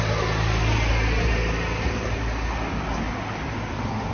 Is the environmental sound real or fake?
real